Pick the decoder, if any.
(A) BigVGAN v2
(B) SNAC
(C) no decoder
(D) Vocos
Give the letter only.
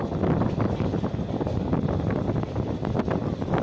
C